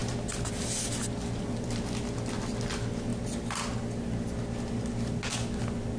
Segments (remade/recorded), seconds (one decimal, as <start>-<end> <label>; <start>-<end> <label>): 0.0-6.0 recorded